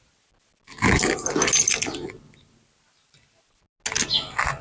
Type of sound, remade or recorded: recorded